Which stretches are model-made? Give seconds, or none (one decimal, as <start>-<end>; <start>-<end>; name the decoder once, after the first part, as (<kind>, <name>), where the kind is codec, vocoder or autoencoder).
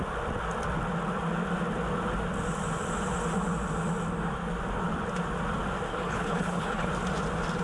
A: 5.9-6.9 (codec, HILCodec)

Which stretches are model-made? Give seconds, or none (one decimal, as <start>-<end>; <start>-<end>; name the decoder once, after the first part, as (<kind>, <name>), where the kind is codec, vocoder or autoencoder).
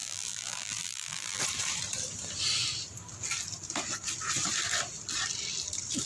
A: 0.0-1.4 (vocoder, BigVGAN v2)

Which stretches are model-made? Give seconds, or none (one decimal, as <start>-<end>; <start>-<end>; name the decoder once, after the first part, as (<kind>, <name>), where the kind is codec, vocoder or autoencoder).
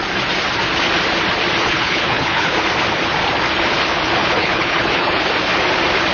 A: 1.6-2.5 (codec, HILCodec); 4.2-5.2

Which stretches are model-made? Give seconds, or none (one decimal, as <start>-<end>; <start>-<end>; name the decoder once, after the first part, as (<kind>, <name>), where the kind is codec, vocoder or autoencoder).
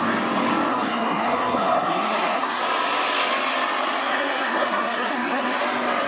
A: 0.7-2.6 (codec, SNAC); 4.0-5.6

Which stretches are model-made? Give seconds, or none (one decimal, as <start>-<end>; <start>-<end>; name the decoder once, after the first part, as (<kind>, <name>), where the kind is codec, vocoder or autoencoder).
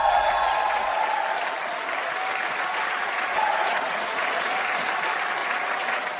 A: 0.0-1.0 (vocoder, Vocos); 2.4-4.9; 5.4-6.2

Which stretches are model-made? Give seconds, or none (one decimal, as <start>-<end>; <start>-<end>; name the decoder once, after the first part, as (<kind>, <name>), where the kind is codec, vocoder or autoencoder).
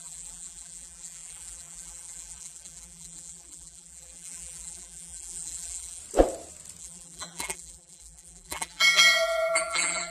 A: 0.0-6.0 (vocoder, BigVGAN v2); 6.8-10.1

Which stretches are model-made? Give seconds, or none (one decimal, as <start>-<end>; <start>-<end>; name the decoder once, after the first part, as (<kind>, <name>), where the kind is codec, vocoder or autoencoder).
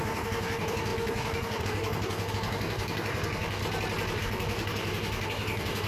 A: 0.0-3.6 (codec, DAC); 4.2-5.9